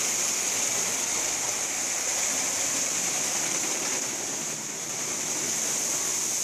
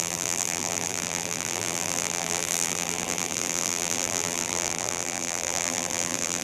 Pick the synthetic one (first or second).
second